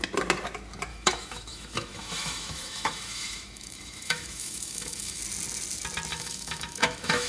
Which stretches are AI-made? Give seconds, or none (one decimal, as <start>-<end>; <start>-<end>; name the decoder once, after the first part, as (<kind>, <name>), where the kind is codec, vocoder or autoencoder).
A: 0.9-5.2 (autoencoder, DAC-VAE); 6.1-7.3